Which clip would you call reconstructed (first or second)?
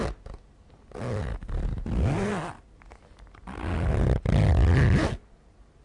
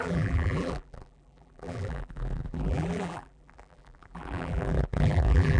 second